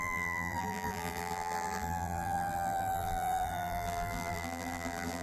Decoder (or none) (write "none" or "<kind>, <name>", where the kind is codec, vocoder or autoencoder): vocoder, BigVGAN v2